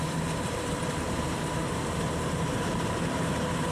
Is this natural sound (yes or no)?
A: no